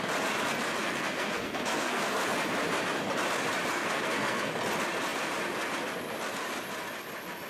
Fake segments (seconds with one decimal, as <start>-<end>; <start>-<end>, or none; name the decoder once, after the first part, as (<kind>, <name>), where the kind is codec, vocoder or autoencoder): 0.8-2.0 (codec, SNAC); 3.7-4.5